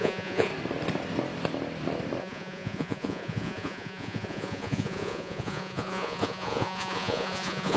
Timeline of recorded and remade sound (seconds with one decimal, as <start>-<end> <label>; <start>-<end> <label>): 0.0-0.5 remade; 0.5-2.2 recorded; 2.2-7.8 remade